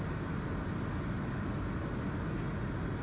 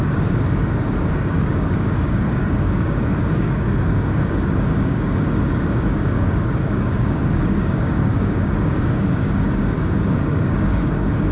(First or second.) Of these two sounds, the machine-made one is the second